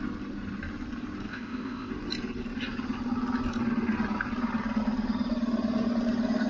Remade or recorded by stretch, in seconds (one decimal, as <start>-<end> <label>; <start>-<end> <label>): 0.0-1.3 recorded; 1.3-1.9 remade; 1.9-6.5 recorded